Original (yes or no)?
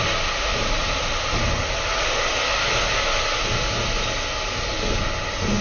yes